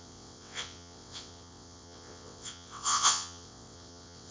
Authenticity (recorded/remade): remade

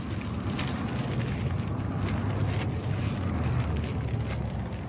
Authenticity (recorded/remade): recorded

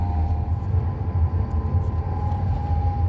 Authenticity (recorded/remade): recorded